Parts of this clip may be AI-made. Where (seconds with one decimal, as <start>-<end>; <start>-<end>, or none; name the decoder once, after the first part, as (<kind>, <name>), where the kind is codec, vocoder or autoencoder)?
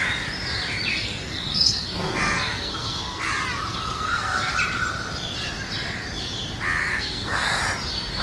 0.9-3.3 (codec, SNAC); 3.7-4.5; 6.8-7.6